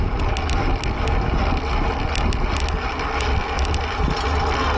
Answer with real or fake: real